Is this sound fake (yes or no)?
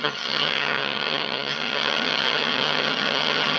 yes